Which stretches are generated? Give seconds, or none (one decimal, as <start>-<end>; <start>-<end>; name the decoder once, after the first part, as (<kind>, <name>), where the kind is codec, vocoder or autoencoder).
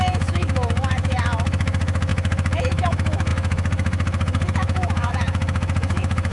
0.0-6.3 (autoencoder, DAC-VAE)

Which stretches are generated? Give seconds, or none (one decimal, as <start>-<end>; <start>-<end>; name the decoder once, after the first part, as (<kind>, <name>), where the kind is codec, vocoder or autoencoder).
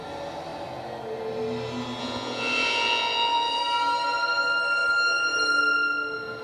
2.0-3.6 (vocoder, Vocos)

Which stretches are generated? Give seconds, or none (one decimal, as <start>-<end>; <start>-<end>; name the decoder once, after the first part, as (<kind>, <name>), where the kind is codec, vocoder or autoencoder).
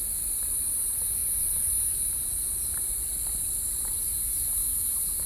none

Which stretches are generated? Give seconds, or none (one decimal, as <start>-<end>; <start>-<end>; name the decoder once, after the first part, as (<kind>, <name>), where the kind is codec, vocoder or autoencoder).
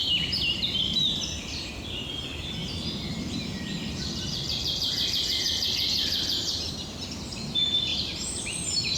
2.6-6.7 (vocoder, BigVGAN v2); 7.9-9.0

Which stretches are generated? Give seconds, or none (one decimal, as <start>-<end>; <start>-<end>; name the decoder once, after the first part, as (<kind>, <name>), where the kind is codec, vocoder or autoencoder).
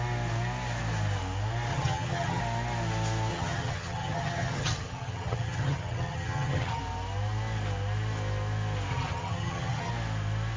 1.7-2.4 (vocoder, HiFi-GAN); 3.3-6.8; 8.9-9.9